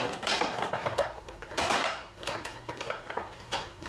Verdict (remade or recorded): remade